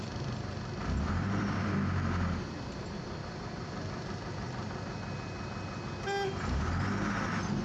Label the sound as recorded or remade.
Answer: recorded